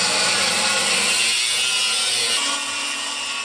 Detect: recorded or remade recorded